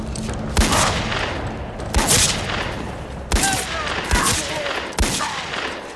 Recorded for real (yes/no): yes